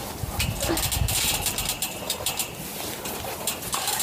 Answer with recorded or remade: recorded